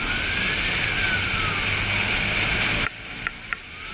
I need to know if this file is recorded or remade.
recorded